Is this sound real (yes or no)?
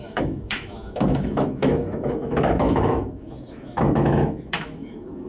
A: no